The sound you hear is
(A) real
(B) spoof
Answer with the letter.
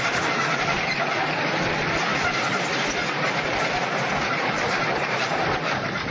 A